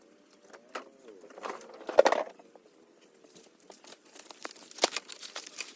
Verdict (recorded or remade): recorded